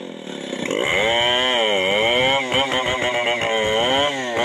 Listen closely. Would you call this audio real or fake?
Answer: real